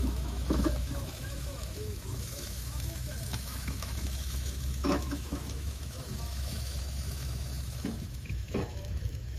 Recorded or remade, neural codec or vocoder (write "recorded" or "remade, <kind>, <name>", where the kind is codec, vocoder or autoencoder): remade, autoencoder, DAC-VAE